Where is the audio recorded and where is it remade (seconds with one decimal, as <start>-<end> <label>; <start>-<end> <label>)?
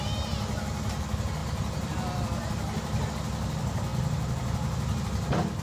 0.0-5.6 recorded